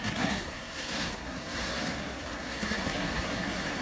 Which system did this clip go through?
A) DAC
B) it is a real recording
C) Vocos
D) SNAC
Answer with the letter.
D